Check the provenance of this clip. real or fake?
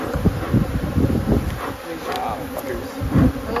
real